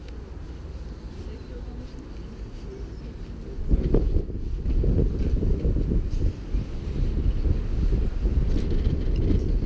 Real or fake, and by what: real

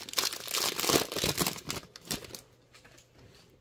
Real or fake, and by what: real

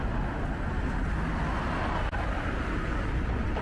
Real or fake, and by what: real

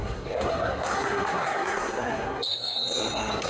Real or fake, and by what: fake, codec, SNAC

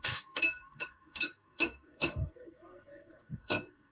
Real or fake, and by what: fake, codec, SNAC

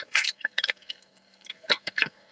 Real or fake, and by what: fake, codec, SNAC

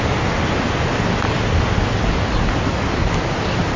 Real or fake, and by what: real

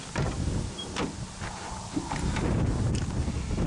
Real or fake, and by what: real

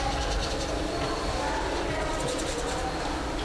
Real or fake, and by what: real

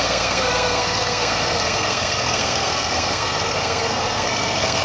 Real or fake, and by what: fake, codec, SNAC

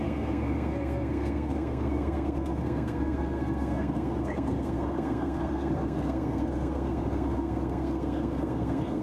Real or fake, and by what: fake, codec, SNAC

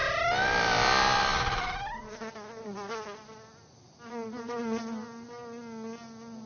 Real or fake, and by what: real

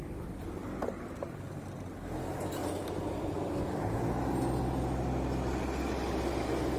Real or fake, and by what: real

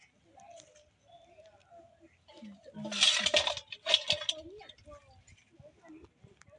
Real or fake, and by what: real